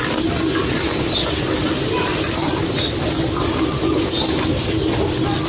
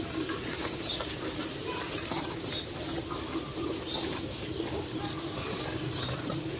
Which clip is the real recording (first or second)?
first